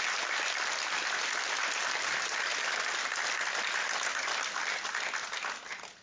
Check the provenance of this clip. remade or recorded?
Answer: recorded